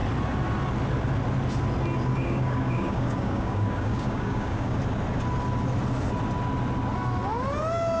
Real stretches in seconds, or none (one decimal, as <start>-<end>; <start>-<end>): 0.0-2.1; 4.8-8.0